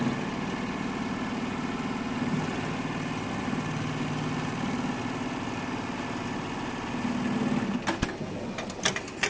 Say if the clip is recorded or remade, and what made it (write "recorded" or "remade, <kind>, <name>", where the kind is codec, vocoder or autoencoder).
recorded